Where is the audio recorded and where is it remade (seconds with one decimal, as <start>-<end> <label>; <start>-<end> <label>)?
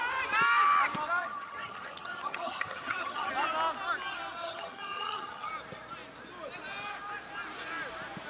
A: 0.0-1.2 recorded; 1.2-3.3 remade; 3.3-4.4 recorded; 4.4-5.5 remade; 5.5-8.3 recorded